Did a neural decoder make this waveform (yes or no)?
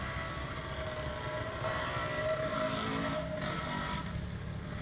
no